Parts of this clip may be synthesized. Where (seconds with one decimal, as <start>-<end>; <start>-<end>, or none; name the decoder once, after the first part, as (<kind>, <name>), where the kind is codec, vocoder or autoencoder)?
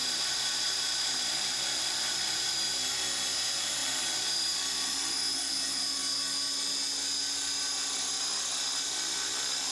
0.0-2.5 (vocoder, BigVGAN v2)